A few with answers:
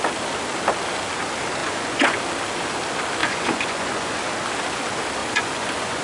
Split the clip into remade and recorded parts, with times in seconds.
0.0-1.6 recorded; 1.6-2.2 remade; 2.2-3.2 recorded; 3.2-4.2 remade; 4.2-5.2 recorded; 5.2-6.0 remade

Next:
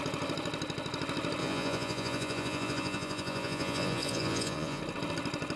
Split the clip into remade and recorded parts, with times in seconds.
0.0-1.4 recorded; 1.4-4.8 remade; 4.8-5.6 recorded